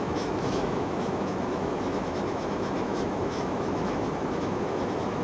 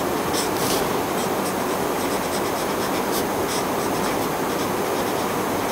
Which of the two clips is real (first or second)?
second